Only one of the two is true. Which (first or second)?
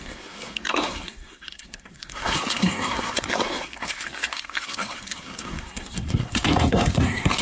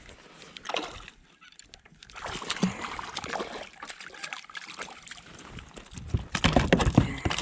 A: second